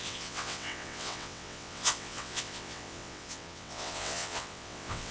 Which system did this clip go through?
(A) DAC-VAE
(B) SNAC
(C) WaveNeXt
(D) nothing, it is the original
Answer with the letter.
C